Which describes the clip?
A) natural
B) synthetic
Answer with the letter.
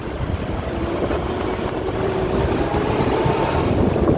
B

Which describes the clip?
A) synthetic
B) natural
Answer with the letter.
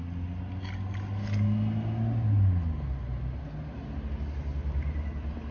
B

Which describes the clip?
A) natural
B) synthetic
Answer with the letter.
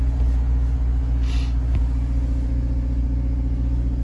A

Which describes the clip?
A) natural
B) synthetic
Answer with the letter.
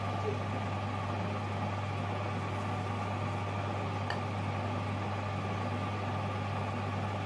A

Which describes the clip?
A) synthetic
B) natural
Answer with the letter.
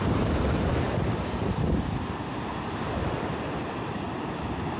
A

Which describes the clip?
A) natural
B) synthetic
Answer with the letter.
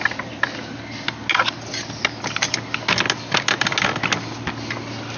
A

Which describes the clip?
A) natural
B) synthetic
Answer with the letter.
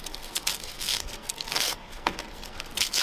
B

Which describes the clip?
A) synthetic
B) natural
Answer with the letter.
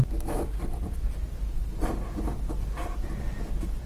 B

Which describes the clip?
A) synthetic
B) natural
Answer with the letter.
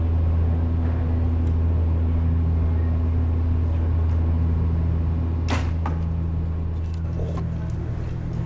B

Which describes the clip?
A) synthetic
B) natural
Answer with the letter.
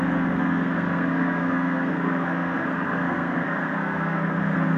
A